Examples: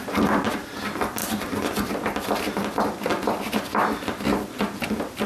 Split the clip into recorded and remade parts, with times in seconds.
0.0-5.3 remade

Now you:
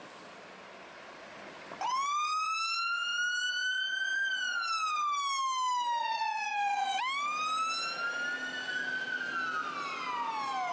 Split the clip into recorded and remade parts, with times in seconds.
0.0-6.0 recorded; 6.0-7.0 remade; 7.0-10.7 recorded

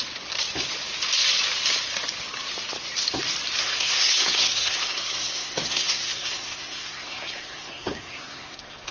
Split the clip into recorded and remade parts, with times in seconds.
0.0-3.6 recorded; 3.6-8.9 remade

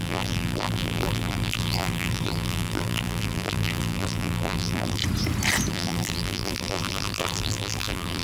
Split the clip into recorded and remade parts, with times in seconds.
0.0-5.0 remade; 5.0-5.7 recorded; 5.7-8.2 remade

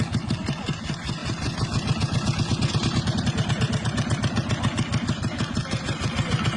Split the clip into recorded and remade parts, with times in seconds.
0.0-6.6 recorded

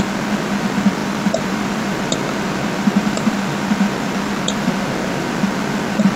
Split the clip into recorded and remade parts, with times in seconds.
0.0-1.0 recorded; 1.0-4.7 remade; 4.7-6.2 recorded

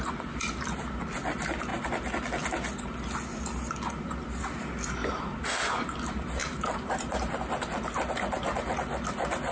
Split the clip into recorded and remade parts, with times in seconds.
0.0-6.4 recorded; 6.4-7.4 remade; 7.4-9.5 recorded